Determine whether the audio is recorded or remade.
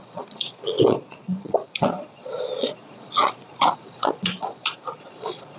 remade